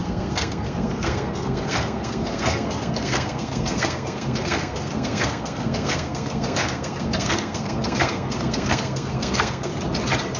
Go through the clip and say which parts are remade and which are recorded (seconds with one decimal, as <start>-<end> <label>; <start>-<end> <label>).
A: 0.0-9.7 remade; 9.7-10.4 recorded

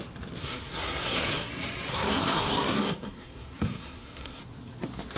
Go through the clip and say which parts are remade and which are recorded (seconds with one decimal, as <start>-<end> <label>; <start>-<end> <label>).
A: 0.0-0.4 recorded; 0.4-1.5 remade; 1.5-1.9 recorded; 1.9-4.4 remade; 4.4-5.2 recorded

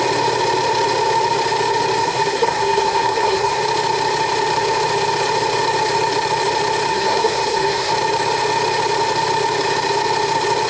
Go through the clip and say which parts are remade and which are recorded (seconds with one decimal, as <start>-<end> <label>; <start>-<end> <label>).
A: 0.0-2.0 recorded; 2.0-3.6 remade; 3.6-6.9 recorded; 6.9-7.9 remade; 7.9-10.7 recorded

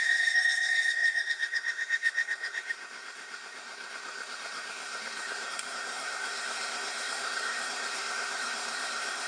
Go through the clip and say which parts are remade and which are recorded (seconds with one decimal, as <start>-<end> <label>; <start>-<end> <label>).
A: 0.0-9.3 remade

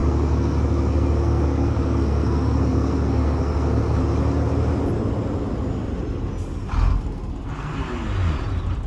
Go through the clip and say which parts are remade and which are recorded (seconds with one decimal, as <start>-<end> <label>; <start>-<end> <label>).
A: 0.0-4.0 remade; 4.0-6.9 recorded; 6.9-7.7 remade; 7.7-8.9 recorded

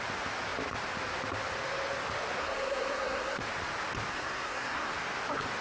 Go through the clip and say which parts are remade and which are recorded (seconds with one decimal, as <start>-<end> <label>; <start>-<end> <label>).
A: 0.0-2.4 recorded; 2.4-3.4 remade; 3.4-4.1 recorded; 4.1-4.9 remade; 4.9-5.6 recorded

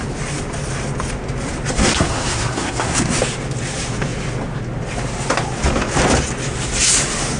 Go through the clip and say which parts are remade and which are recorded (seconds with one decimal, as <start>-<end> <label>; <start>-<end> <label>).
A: 0.0-1.8 recorded; 1.8-3.2 remade; 3.2-7.4 recorded